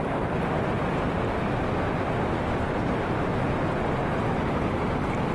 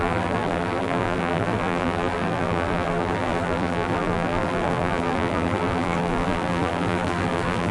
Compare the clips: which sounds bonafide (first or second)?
first